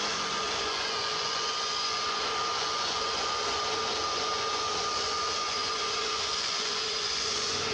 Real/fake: fake